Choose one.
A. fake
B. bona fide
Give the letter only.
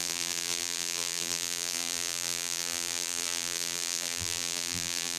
A